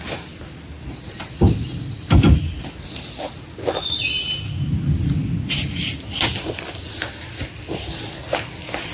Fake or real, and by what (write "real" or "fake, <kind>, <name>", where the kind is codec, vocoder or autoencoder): real